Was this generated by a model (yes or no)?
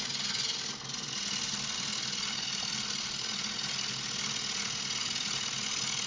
no